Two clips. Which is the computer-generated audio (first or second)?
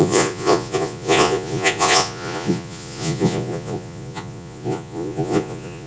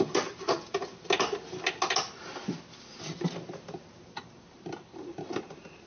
first